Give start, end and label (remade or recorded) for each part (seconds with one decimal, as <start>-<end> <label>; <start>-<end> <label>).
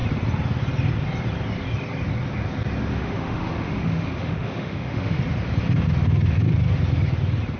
0.0-2.9 recorded; 2.9-5.2 remade; 5.2-7.6 recorded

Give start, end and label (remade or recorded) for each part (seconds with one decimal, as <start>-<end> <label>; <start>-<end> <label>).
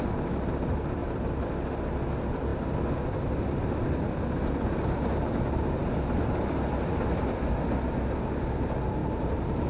0.0-1.0 recorded; 1.0-1.5 remade; 1.5-9.0 recorded; 9.0-9.7 remade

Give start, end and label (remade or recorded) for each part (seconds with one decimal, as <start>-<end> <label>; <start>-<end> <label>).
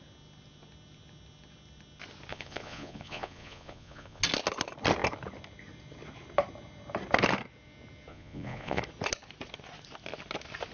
0.0-2.3 recorded; 2.3-4.2 remade; 4.2-8.1 recorded; 8.1-8.8 remade; 8.8-10.7 recorded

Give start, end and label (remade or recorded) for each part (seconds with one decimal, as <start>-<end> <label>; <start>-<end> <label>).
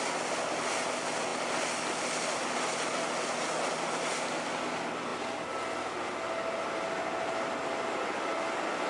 0.0-8.9 recorded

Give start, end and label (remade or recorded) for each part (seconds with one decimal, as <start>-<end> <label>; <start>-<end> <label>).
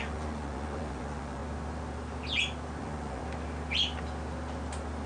0.0-1.4 remade; 1.4-2.8 recorded; 2.8-3.2 remade; 3.2-5.1 recorded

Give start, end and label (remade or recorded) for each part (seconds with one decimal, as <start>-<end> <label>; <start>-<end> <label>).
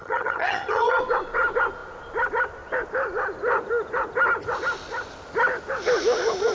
0.0-1.0 remade; 1.0-6.5 recorded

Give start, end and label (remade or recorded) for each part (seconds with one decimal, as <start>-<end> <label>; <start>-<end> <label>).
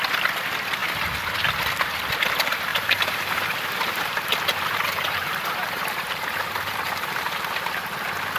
0.0-2.7 recorded; 2.7-7.7 remade; 7.7-8.4 recorded